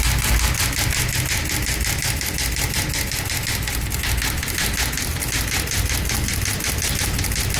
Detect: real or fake real